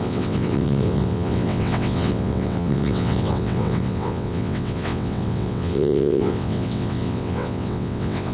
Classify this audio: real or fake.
fake